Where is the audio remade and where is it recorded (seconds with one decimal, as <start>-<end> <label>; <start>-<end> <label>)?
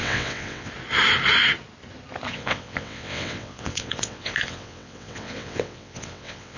0.0-0.7 remade; 0.7-2.3 recorded; 2.3-6.6 remade